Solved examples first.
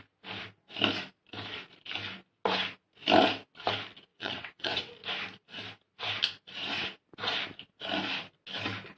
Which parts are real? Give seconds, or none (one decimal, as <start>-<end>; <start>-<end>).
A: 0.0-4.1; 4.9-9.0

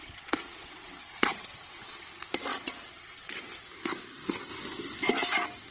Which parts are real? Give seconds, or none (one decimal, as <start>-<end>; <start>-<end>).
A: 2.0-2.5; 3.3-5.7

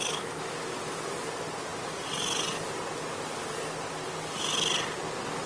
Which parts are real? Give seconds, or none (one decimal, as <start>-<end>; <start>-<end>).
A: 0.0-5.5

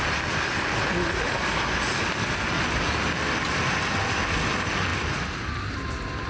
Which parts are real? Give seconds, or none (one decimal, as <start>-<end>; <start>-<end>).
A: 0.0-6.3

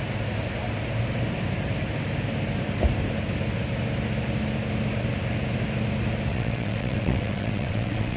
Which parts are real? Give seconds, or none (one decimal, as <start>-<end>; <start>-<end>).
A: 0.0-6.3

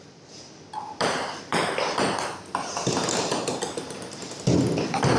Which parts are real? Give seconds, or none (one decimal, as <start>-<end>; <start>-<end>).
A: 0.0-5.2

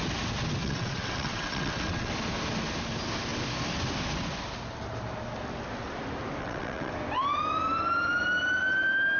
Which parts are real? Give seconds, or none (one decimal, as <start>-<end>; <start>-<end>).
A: 0.0-0.6; 2.1-6.4; 6.9-9.2

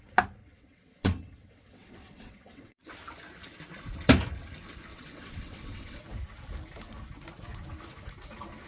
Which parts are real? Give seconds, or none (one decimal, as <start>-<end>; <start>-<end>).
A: 0.0-0.4; 2.9-4.9; 6.0-8.7